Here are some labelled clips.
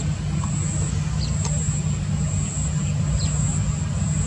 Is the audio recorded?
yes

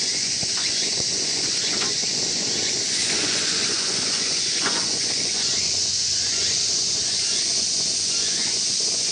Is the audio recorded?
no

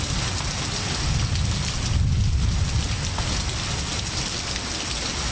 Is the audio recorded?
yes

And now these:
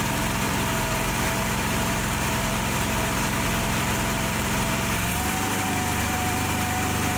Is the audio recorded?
no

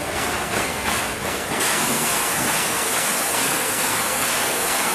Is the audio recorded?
no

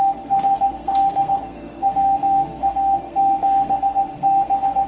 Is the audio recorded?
no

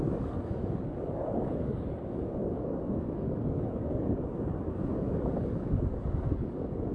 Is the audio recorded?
no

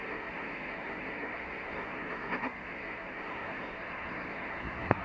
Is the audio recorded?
no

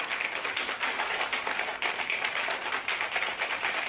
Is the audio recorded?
no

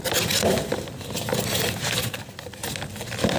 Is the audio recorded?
yes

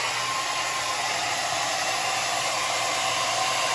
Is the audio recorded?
no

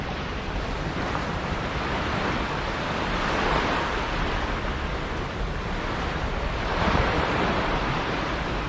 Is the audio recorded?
no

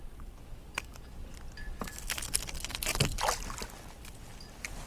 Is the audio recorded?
yes